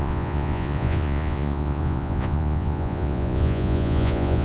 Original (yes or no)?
no